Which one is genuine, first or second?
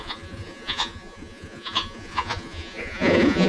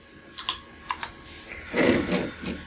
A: second